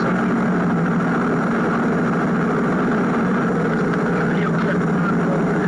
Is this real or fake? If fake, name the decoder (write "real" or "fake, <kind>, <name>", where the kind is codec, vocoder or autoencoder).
real